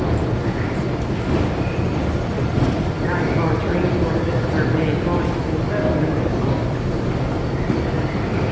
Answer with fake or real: real